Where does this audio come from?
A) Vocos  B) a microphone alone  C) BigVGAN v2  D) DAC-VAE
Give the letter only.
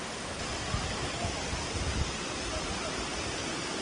B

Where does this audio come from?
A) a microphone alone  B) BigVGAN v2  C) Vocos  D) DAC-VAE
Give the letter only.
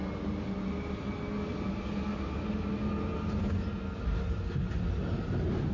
A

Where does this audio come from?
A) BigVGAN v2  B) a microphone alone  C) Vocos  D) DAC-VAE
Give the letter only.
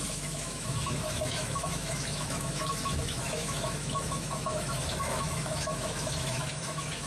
D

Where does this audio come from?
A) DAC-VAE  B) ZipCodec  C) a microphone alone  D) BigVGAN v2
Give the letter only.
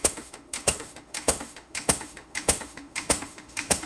A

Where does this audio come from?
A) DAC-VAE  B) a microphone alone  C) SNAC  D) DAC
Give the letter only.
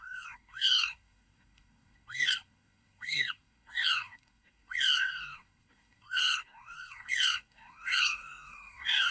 C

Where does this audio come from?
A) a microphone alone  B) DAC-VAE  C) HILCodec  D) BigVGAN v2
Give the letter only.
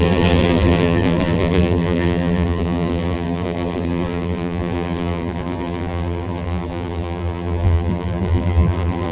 D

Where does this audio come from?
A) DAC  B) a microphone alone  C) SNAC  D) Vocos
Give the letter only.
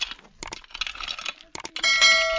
B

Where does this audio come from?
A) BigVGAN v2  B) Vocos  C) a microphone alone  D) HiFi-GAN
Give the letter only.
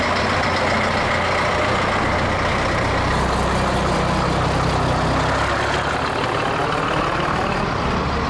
C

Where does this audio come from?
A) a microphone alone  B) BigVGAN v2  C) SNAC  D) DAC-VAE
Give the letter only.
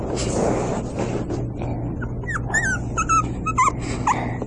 A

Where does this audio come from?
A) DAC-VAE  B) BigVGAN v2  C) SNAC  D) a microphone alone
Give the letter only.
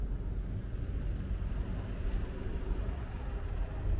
D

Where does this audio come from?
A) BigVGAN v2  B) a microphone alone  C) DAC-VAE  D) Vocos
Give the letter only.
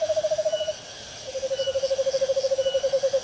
B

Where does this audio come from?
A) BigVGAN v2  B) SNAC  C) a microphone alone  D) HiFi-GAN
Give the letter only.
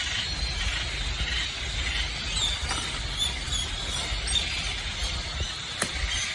C